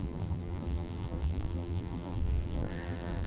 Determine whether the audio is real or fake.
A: fake